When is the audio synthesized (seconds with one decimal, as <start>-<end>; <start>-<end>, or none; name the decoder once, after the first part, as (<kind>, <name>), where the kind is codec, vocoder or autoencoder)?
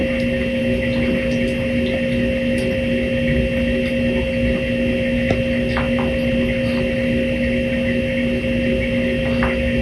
none